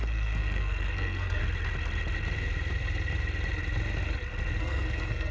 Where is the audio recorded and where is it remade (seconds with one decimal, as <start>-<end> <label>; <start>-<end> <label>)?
0.0-1.4 remade; 1.4-4.6 recorded; 4.6-5.3 remade